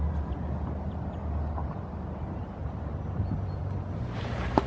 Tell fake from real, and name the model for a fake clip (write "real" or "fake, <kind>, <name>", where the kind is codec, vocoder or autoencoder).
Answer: real